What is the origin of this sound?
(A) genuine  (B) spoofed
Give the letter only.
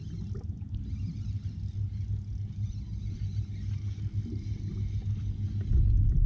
A